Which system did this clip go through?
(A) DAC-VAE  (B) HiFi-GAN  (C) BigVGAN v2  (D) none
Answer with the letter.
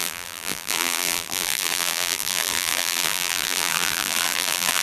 C